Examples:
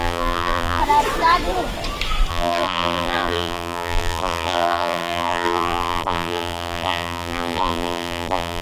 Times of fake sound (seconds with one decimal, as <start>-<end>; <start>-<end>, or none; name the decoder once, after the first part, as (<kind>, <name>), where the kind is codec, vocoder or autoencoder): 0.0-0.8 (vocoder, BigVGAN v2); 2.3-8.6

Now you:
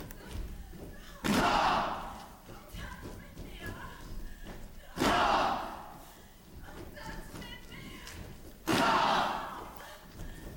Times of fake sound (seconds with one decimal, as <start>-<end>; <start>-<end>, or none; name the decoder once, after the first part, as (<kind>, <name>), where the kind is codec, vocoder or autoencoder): 1.3-2.4 (vocoder, BigVGAN v2); 8.7-9.8

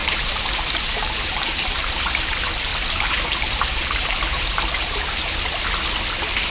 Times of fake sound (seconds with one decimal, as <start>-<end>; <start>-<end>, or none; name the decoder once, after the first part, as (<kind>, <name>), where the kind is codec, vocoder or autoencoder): 0.0-2.0 (vocoder, BigVGAN v2); 2.7-5.5

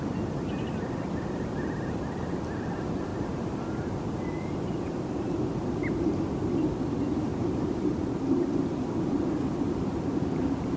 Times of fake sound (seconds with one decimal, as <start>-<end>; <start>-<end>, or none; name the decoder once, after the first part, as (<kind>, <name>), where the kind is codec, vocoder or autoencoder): 3.1-4.0 (vocoder, BigVGAN v2); 7.3-10.8